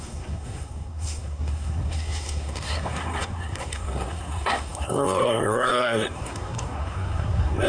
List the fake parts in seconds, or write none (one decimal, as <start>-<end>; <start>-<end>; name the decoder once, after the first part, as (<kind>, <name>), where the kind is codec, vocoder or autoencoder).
0.0-7.7 (codec, SNAC)